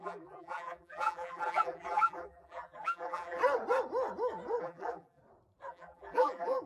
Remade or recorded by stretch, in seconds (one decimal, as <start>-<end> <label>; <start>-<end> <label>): 0.0-3.4 remade; 3.4-4.6 recorded; 4.6-5.2 remade; 5.2-5.7 recorded; 5.7-6.7 remade